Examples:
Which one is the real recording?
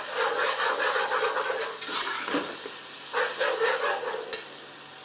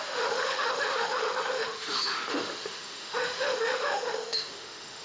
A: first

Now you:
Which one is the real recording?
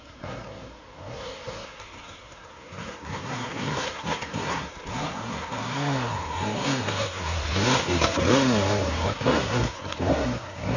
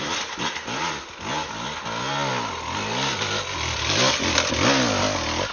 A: second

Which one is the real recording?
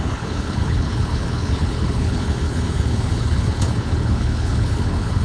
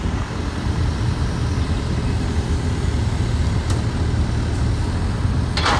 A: second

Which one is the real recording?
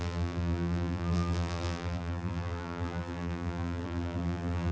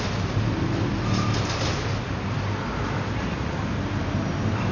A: second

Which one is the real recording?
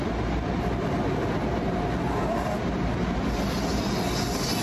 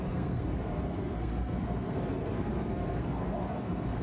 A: first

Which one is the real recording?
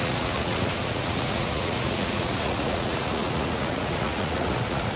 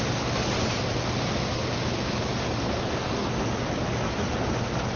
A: second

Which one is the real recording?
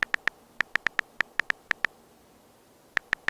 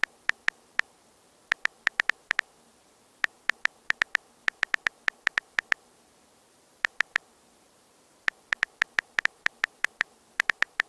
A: first